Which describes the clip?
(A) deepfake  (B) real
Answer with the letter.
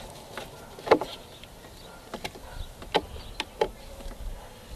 B